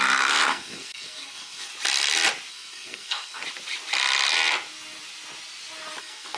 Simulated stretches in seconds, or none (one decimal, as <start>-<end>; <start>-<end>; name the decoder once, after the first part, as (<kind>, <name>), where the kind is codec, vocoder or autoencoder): 0.0-1.7 (codec, SNAC); 2.5-3.4; 6.0-6.4